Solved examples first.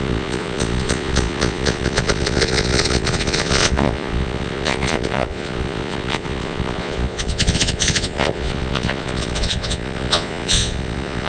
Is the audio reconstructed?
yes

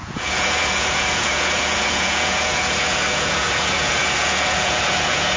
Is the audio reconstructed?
yes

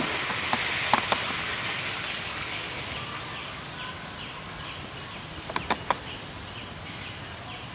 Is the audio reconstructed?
no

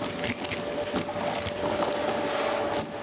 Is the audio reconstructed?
no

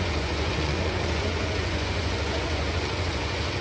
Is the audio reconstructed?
yes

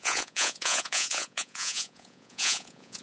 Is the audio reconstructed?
yes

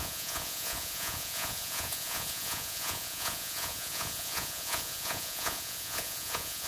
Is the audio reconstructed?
yes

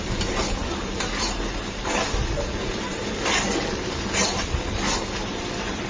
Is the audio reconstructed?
no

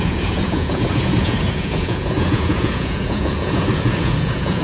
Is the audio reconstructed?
yes